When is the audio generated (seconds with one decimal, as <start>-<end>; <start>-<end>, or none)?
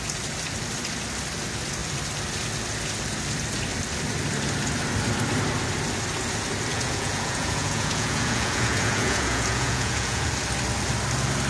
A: 6.7-10.3